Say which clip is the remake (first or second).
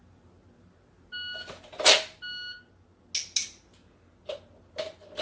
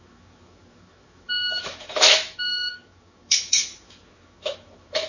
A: second